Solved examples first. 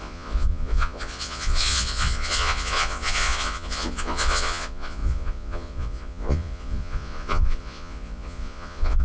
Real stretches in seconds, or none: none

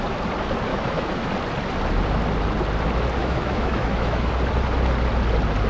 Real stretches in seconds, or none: 0.0-0.7; 1.3-3.2; 4.3-5.7

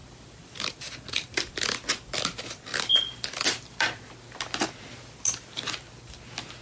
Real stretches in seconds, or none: 1.5-6.6

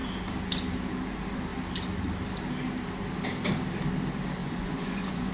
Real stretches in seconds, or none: 0.0-4.4

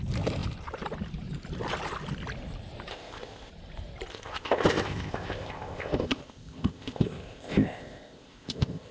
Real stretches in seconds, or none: 0.0-2.9; 3.5-4.1

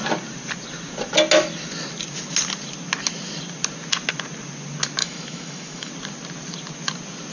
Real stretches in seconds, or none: 0.0-5.0; 5.9-7.3